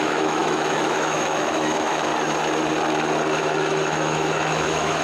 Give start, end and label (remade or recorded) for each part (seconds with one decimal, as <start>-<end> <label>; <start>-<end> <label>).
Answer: 0.0-2.1 remade; 2.1-3.4 recorded; 3.4-5.0 remade